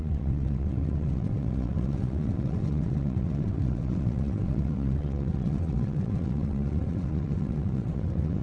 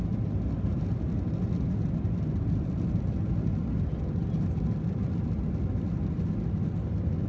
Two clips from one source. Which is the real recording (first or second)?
second